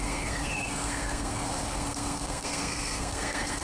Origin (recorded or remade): remade